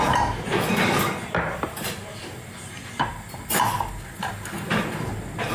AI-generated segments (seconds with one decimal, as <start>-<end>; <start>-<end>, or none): none